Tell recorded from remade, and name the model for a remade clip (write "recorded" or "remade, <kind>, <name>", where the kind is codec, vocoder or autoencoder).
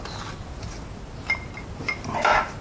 recorded